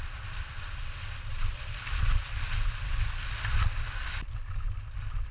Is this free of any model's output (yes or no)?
no